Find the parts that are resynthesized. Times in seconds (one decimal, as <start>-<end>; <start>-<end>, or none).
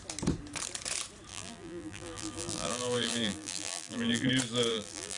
1.3-4.3; 4.7-5.2